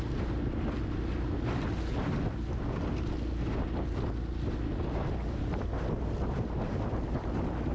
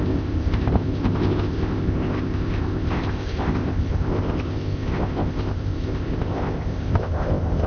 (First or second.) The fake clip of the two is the second